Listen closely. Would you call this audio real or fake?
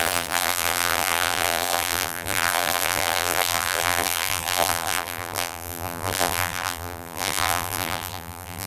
fake